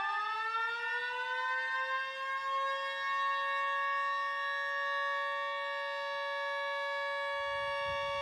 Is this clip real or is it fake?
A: real